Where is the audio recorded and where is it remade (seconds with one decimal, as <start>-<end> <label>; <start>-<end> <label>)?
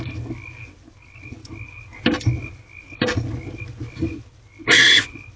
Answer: 0.0-5.4 recorded